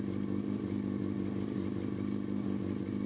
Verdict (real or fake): real